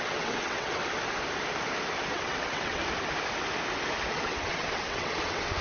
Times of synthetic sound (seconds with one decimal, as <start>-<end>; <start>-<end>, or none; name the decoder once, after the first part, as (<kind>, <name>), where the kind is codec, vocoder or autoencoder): 0.0-0.8 (vocoder, WaveNeXt); 2.1-2.8; 4.1-5.6